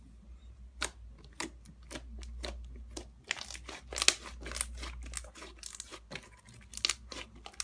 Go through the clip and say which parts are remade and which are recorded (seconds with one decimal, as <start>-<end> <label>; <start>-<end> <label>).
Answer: 0.0-7.6 recorded